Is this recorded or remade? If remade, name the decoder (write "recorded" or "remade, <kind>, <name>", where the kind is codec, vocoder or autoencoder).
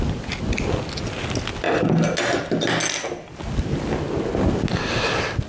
recorded